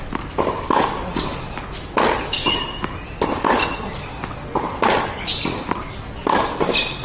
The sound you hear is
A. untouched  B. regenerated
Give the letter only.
A